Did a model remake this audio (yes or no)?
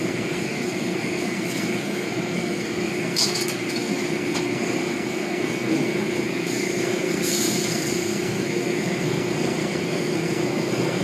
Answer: yes